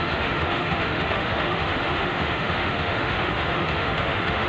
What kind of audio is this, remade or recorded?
remade